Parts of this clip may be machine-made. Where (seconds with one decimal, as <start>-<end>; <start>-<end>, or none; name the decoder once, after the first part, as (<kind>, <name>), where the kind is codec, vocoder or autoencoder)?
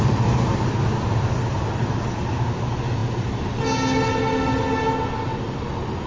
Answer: none